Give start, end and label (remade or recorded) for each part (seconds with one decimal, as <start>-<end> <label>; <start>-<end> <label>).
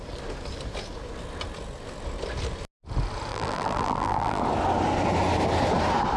0.0-3.3 recorded; 3.3-4.4 remade; 4.4-6.2 recorded